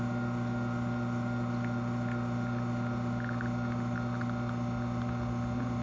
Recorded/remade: recorded